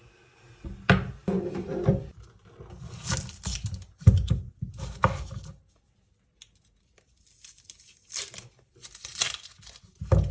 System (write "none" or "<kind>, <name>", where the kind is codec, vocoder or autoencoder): none